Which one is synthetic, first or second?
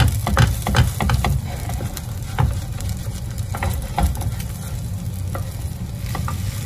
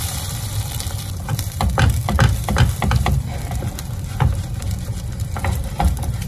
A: second